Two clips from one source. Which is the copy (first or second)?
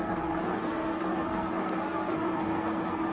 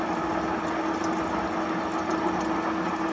first